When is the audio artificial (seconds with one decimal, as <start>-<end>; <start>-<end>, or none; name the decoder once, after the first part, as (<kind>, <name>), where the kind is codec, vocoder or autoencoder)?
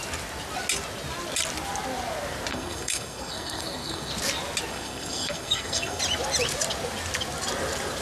2.5-4.1 (codec, SNAC); 4.7-6.0